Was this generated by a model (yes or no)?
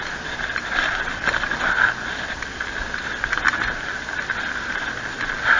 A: no